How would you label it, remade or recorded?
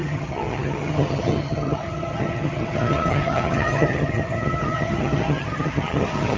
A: remade